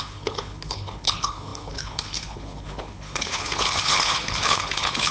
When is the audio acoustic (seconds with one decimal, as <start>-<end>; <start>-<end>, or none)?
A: none